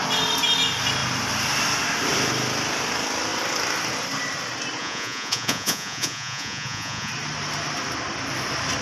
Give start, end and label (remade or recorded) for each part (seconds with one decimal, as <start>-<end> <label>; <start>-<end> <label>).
0.0-4.8 recorded; 4.8-7.1 remade; 7.1-8.8 recorded